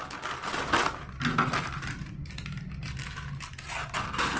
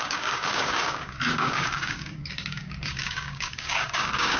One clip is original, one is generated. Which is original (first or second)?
first